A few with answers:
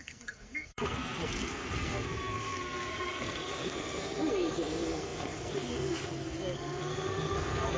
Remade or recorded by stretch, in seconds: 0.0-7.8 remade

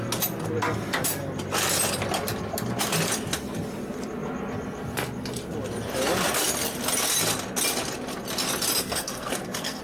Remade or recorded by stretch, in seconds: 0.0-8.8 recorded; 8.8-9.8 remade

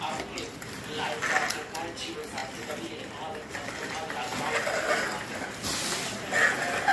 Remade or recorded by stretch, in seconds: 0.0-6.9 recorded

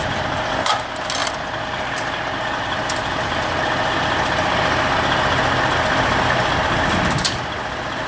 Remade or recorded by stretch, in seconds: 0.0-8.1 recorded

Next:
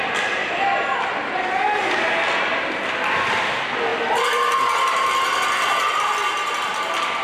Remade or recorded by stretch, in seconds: 0.0-7.2 recorded

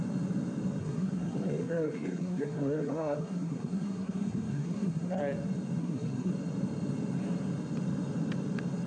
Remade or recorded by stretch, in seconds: 0.0-0.8 recorded; 0.8-5.2 remade; 5.2-5.8 recorded; 5.8-6.3 remade; 6.3-8.9 recorded

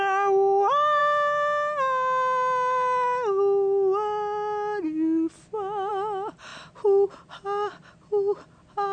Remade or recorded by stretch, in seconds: 0.0-8.9 recorded